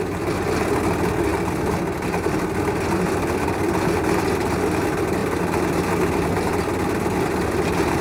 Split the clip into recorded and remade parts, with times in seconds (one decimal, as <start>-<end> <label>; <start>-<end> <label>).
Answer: 0.0-8.0 recorded